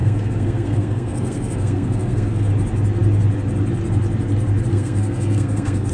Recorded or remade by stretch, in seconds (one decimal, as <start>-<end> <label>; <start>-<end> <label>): 0.0-2.5 remade; 2.5-4.7 recorded; 4.7-5.9 remade